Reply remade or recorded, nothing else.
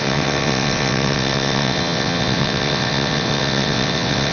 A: remade